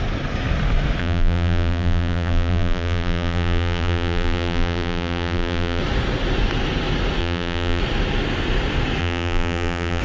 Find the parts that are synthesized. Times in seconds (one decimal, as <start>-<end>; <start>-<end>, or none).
1.0-5.8; 7.2-7.8; 9.0-10.0